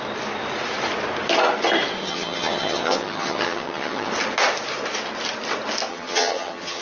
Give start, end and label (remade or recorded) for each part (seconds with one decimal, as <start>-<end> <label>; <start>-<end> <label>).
0.0-2.0 recorded; 2.0-4.1 remade; 4.1-5.9 recorded; 5.9-6.8 remade